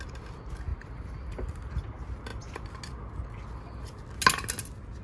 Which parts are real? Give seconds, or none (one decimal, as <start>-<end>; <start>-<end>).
0.0-5.0